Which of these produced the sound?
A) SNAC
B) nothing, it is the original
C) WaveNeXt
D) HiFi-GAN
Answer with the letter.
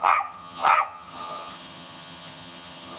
D